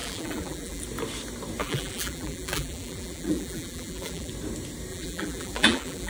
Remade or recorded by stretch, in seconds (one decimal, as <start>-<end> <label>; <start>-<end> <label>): 0.0-0.8 remade; 0.8-1.6 recorded; 1.6-4.3 remade; 4.3-4.9 recorded; 4.9-6.1 remade